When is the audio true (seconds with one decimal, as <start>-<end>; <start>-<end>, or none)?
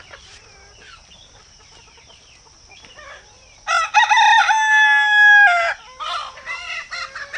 0.0-7.4